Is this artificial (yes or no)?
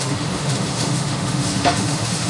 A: yes